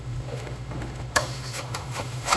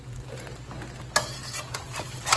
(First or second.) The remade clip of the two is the first